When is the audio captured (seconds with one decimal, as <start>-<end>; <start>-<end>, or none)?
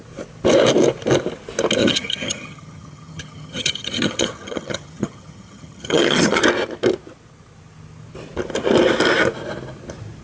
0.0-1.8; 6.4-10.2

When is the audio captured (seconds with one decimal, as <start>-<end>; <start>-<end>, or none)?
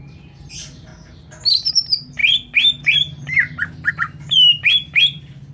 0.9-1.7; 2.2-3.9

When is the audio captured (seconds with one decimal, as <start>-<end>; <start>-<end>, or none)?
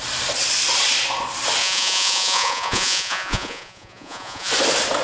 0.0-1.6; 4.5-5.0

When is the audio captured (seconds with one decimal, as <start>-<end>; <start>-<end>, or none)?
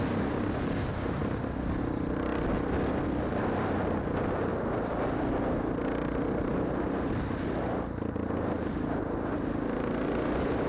0.0-10.7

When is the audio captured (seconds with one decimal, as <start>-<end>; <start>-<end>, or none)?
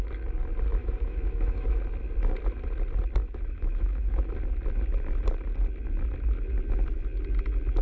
0.0-0.8; 1.8-3.2; 4.2-7.8